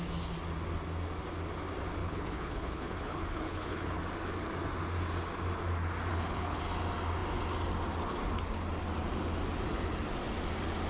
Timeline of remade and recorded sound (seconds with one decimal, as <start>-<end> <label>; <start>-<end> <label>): 0.0-2.0 recorded; 2.0-4.0 remade; 4.0-6.1 recorded; 6.1-6.6 remade; 6.6-10.9 recorded